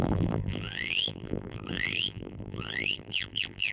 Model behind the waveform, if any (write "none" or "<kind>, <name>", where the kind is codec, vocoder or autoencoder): vocoder, BigVGAN v2